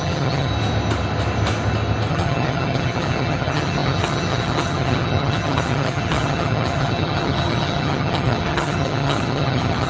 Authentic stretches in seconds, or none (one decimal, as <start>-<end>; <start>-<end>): 0.5-2.1